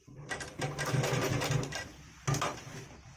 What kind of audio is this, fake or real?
real